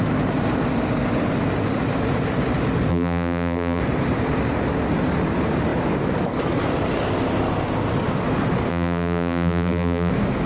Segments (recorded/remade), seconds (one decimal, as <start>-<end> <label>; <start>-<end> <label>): 0.0-2.9 recorded; 2.9-3.8 remade; 3.8-8.7 recorded; 8.7-10.1 remade; 10.1-10.5 recorded